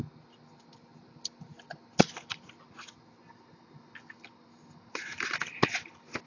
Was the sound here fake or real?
real